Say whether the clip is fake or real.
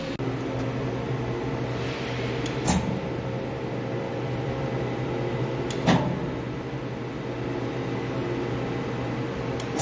real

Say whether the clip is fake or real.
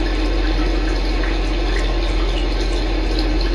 real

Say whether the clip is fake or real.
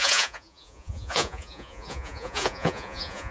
fake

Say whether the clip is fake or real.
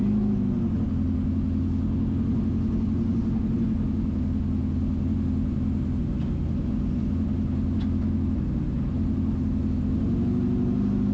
real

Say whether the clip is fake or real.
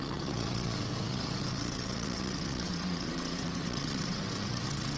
fake